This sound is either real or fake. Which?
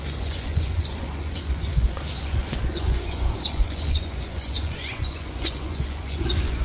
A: fake